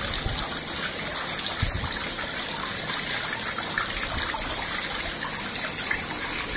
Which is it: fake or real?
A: real